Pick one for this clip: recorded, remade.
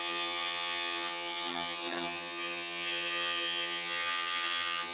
remade